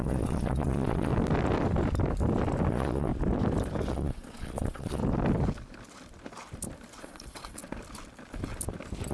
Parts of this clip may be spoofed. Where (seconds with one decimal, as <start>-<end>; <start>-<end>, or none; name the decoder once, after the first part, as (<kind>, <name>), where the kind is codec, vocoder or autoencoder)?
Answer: 0.0-1.1 (vocoder, Vocos); 2.7-3.1; 3.9-5.0; 7.0-7.6